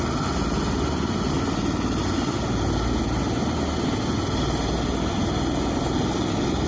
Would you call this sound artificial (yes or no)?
no